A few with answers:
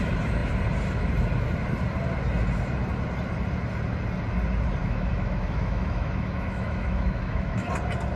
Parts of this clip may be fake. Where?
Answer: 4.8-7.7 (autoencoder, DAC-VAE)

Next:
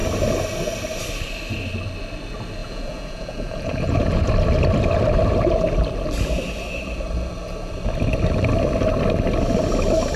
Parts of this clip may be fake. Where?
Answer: 2.6-4.3 (vocoder, Vocos)

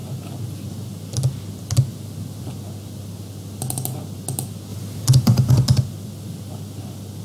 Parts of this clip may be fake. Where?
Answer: 4.7-5.5 (vocoder, BigVGAN v2)